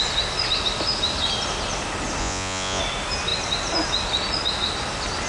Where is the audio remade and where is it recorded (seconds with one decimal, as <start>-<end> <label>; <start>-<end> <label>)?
0.0-2.2 recorded; 2.2-2.8 remade; 2.8-5.3 recorded